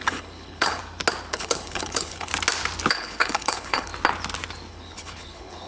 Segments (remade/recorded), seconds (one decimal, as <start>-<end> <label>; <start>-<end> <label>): 0.0-0.8 remade; 0.8-1.3 recorded; 1.3-2.3 remade; 2.3-2.9 recorded; 2.9-3.9 remade; 3.9-4.7 recorded; 4.7-5.7 remade